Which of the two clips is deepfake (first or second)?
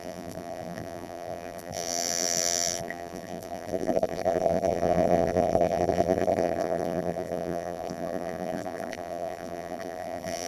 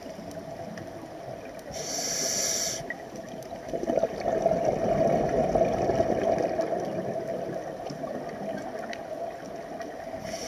first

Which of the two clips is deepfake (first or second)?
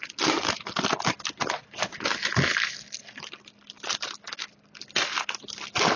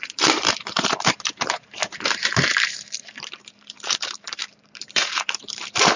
second